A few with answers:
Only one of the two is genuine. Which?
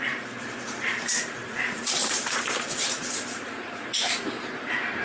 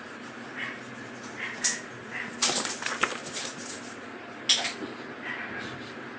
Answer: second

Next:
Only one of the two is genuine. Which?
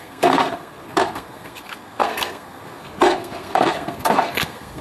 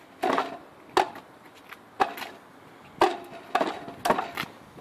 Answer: second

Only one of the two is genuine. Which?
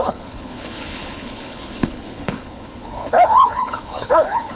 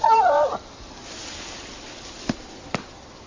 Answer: second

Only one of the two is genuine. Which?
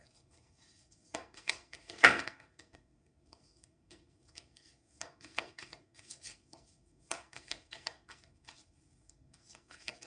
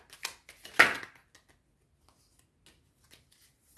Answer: second